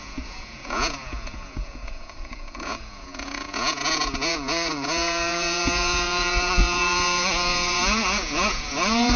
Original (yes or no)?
no